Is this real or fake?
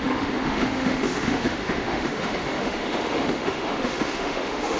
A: fake